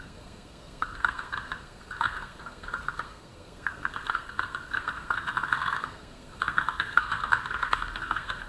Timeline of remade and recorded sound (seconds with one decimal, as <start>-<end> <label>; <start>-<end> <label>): 0.0-8.5 remade